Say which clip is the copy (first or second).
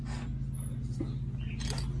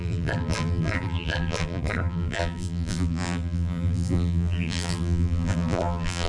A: second